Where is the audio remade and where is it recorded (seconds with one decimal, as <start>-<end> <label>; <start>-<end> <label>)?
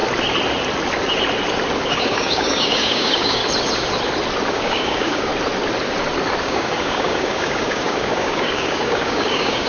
0.0-1.9 recorded; 1.9-3.4 remade; 3.4-4.5 recorded; 4.5-5.3 remade; 5.3-6.4 recorded; 6.4-9.7 remade